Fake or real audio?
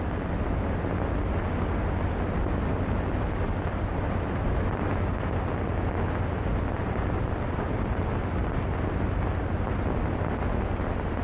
real